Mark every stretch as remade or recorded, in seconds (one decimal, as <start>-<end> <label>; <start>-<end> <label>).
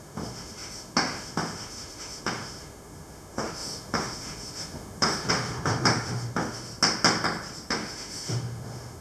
0.0-6.7 remade; 6.7-7.7 recorded; 7.7-9.0 remade